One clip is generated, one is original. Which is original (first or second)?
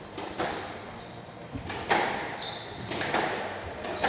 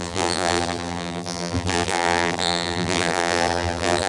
first